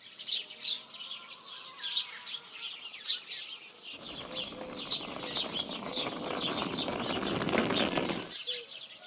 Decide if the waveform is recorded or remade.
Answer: recorded